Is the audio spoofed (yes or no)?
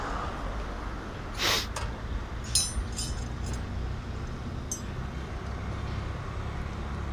no